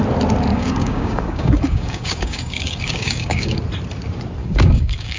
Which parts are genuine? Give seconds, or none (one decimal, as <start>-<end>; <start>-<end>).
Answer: 0.0-0.5; 3.6-4.4